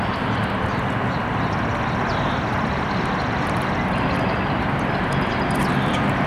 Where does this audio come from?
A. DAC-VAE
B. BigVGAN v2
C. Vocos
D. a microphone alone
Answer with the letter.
D